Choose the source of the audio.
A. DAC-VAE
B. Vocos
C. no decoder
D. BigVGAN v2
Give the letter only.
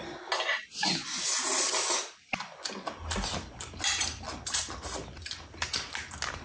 C